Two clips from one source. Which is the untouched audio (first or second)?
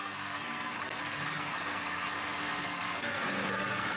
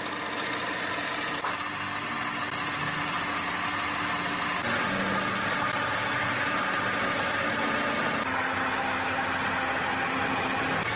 second